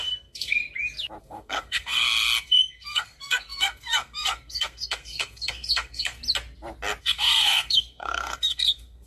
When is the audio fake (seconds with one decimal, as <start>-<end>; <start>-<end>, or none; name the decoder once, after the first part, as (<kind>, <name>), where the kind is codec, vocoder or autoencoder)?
0.0-0.6 (codec, SNAC); 1.2-6.2; 7.0-9.1